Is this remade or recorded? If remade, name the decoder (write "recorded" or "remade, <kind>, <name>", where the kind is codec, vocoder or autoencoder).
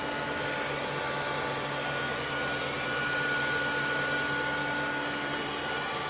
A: recorded